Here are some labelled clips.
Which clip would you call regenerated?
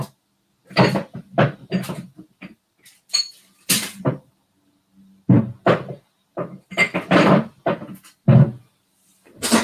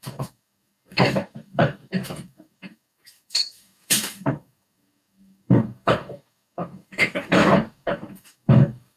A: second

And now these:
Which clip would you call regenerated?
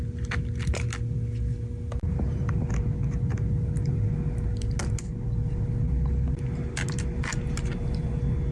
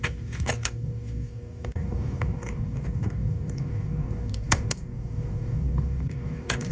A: second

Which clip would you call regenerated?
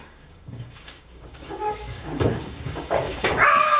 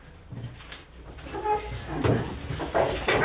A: first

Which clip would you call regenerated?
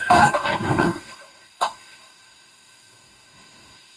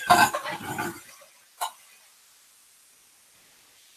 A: first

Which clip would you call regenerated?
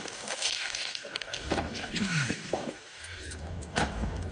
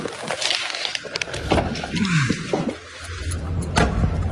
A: first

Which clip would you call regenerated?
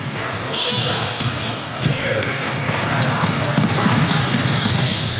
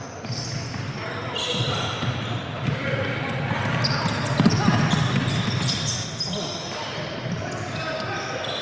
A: first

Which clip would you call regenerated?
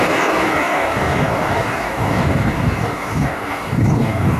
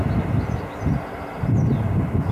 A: first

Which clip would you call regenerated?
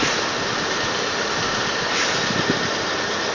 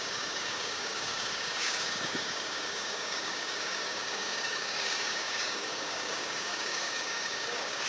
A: second